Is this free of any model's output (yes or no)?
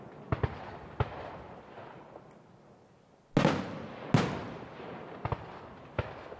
yes